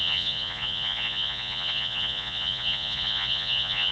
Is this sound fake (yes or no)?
yes